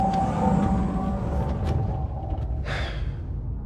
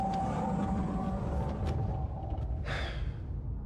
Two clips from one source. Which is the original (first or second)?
first